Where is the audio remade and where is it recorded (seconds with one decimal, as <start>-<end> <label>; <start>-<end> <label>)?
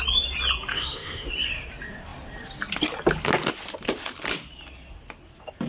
0.0-0.7 recorded; 0.7-1.3 remade; 1.3-5.7 recorded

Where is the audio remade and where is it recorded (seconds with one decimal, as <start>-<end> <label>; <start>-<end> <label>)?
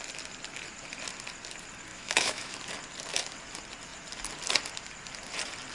0.0-1.9 recorded; 1.9-2.6 remade; 2.6-5.7 recorded